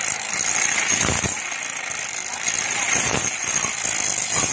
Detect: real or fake real